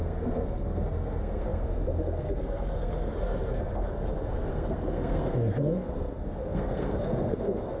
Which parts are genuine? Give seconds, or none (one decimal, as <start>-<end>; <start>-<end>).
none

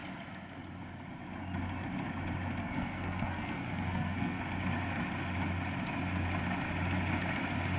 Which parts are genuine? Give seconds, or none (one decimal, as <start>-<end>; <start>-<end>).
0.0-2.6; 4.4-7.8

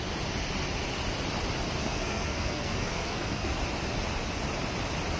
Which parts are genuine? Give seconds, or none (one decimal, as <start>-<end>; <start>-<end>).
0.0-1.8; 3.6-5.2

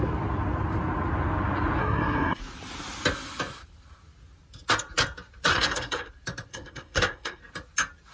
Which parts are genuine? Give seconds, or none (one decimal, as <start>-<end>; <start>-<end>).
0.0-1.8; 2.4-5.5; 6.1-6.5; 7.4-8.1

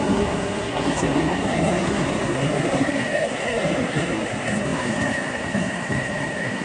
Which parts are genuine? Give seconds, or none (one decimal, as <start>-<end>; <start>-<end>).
none

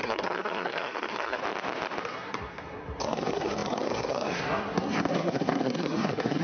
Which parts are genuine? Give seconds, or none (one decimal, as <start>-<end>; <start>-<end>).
1.4-2.0

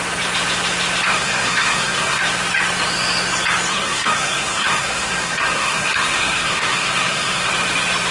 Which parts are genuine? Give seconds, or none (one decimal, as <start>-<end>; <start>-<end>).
0.0-1.1; 2.2-3.7; 7.5-8.1